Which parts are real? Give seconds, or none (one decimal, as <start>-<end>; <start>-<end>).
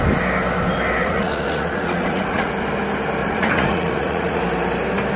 0.0-1.0; 2.5-3.2; 4.4-5.2